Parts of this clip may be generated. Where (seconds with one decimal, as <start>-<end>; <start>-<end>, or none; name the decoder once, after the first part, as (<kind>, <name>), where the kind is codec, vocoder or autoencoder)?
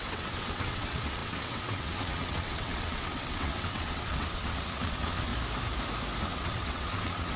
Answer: 0.0-5.3 (vocoder, WaveNeXt); 6.2-7.4